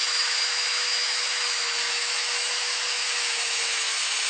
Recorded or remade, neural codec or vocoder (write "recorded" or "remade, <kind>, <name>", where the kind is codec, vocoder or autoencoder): remade, autoencoder, DAC-VAE